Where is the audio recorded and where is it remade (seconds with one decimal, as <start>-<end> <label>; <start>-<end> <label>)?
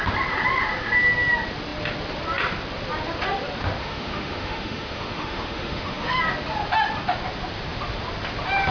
0.0-3.8 recorded; 3.8-6.2 remade; 6.2-8.7 recorded